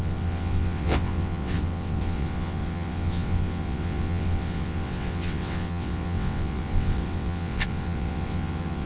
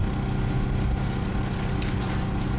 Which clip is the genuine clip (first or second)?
second